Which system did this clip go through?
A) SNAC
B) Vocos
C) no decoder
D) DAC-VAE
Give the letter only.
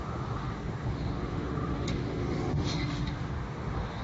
D